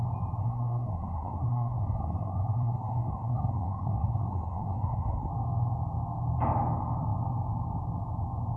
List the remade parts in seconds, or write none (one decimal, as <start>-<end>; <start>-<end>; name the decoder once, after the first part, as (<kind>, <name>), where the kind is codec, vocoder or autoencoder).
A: 0.4-5.3 (codec, SNAC)